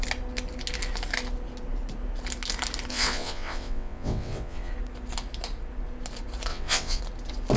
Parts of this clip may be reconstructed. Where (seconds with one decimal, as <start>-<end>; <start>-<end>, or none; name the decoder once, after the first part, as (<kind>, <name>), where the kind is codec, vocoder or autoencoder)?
2.9-4.7 (vocoder, WaveNeXt); 6.5-7.0